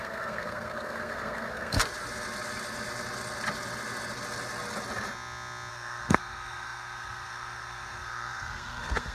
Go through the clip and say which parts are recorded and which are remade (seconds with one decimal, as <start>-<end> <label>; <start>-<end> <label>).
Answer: 0.0-1.8 remade; 1.8-5.7 recorded; 5.7-9.1 remade